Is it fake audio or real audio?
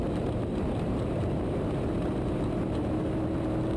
fake